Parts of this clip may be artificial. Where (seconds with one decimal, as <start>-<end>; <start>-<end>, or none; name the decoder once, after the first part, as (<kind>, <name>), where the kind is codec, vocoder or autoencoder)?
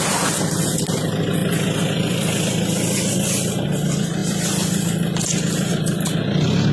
1.4-3.5 (vocoder, BigVGAN v2)